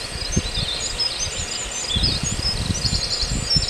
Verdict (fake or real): real